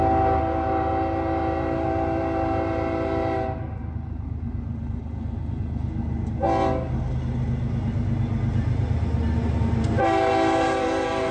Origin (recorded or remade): recorded